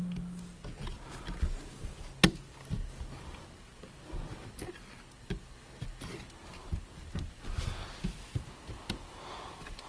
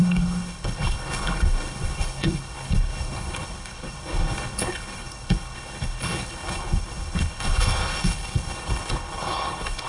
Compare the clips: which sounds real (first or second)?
first